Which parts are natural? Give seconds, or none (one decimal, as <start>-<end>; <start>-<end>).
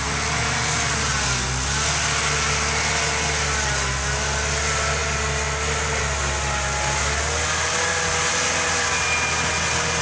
0.0-10.0